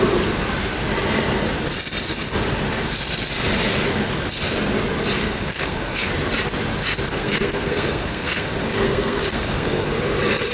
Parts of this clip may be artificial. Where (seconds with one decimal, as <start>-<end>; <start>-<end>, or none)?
5.2-6.1; 7.1-9.9